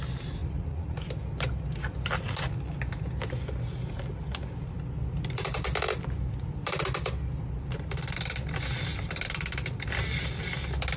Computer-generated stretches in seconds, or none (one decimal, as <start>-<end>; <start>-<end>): 0.4-1.0